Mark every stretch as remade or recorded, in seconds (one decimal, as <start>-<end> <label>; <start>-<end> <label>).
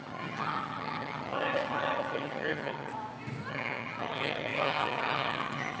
0.0-2.9 remade; 2.9-3.5 recorded; 3.5-5.8 remade